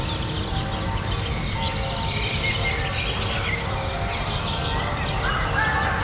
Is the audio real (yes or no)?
yes